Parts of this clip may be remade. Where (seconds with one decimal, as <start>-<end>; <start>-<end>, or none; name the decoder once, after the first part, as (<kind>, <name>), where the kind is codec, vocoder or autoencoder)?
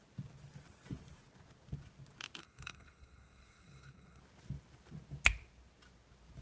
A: 2.4-4.2 (codec, SNAC)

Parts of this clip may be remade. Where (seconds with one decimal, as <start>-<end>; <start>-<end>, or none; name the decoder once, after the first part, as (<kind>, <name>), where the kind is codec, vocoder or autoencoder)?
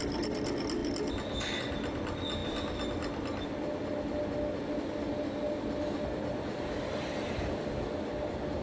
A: none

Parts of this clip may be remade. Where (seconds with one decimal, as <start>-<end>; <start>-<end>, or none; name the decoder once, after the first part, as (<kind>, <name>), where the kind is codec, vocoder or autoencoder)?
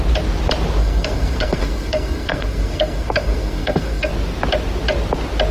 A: 0.8-4.1 (codec, SNAC)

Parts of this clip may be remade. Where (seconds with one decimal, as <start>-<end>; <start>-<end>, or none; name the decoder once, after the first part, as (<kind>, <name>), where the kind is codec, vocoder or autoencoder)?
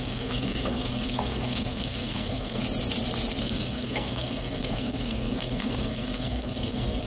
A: 0.0-2.6 (codec, SNAC); 3.4-7.1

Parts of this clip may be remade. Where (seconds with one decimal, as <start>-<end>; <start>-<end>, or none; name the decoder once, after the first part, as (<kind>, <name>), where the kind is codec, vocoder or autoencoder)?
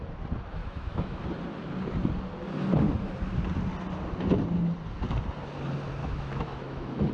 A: 0.6-1.2 (autoencoder, DAC-VAE); 6.0-7.1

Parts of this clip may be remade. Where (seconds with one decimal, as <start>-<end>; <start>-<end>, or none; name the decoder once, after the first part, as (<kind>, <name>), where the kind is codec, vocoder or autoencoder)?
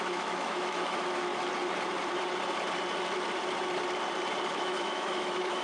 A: 0.0-1.3 (autoencoder, DAC-VAE); 4.5-5.6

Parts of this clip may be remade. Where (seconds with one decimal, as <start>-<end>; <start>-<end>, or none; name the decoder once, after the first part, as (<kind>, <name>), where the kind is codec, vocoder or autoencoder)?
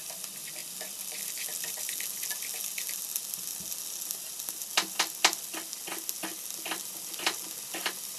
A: none